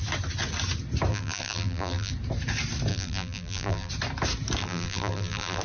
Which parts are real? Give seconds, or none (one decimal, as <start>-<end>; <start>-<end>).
0.0-1.1; 2.1-2.9; 3.9-4.6